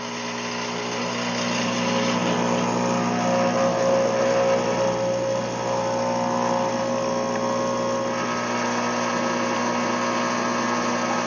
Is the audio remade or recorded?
recorded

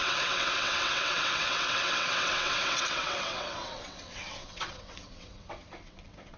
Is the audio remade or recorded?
remade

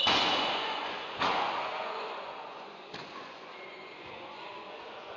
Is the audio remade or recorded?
remade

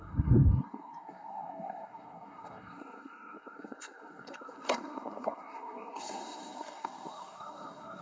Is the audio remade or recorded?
remade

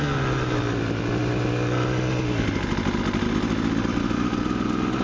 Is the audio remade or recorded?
recorded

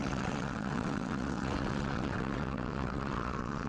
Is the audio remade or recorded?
remade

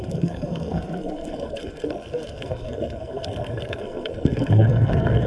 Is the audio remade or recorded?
remade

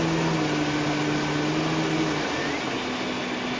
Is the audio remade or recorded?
recorded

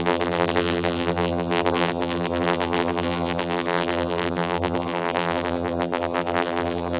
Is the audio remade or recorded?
remade